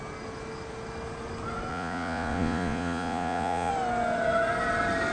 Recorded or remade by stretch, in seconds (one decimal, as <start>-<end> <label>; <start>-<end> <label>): 0.0-1.7 recorded; 1.7-3.7 remade; 3.7-5.1 recorded